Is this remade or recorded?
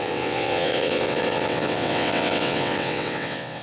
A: remade